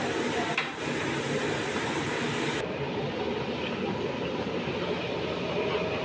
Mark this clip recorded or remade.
recorded